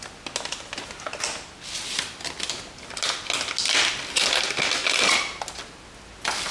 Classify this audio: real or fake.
real